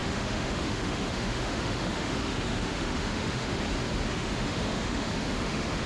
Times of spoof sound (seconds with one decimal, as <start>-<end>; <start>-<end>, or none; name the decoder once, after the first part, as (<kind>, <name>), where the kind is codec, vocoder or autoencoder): 0.0-3.5 (autoencoder, DAC-VAE); 4.1-5.9